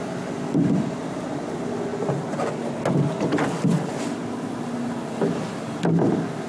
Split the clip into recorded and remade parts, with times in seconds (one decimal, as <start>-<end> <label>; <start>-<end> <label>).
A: 0.0-6.5 recorded

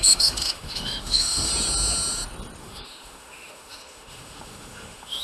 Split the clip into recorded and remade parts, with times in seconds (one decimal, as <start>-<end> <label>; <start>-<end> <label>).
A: 0.0-1.5 remade; 1.5-2.6 recorded; 2.6-5.2 remade

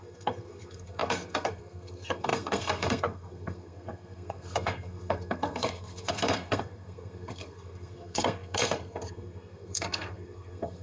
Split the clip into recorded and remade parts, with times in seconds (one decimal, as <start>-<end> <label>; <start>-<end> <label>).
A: 0.0-10.8 remade